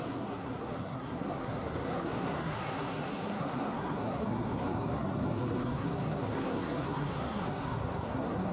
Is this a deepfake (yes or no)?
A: yes